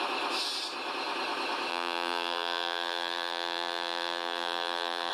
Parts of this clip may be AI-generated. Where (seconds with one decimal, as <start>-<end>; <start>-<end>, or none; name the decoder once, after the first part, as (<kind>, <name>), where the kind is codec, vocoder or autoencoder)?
1.7-5.1 (vocoder, BigVGAN v2)